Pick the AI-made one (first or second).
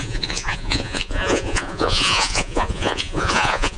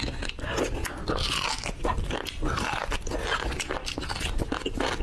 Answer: first